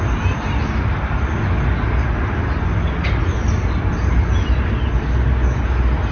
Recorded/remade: recorded